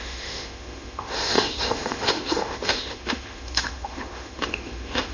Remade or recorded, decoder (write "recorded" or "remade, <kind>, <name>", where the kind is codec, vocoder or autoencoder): remade, autoencoder, DAC-VAE